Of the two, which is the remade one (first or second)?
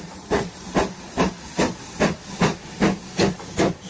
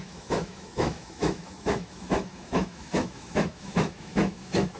second